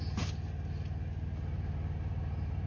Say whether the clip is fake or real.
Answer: real